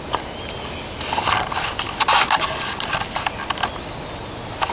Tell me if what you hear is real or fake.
real